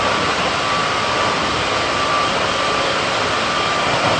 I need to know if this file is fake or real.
real